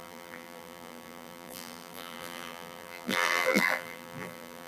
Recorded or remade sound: remade